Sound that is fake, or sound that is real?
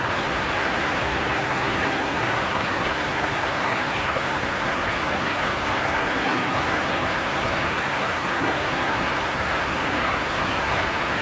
fake